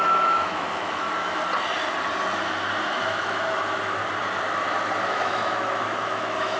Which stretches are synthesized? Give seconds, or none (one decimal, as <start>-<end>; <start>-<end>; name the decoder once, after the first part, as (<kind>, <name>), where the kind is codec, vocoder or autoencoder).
0.0-1.4 (autoencoder, DAC-VAE); 2.8-4.0; 5.0-6.6